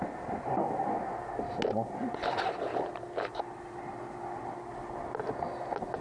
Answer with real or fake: real